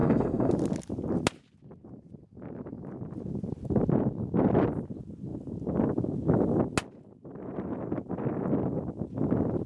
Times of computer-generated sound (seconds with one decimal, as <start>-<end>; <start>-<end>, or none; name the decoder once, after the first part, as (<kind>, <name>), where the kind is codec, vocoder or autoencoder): 0.0-0.5 (codec, SNAC)